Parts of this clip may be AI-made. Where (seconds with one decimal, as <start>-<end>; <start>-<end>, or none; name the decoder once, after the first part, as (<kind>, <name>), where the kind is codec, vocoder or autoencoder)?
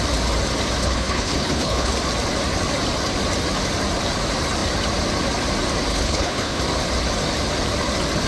0.8-1.9 (codec, HILCodec); 5.9-6.6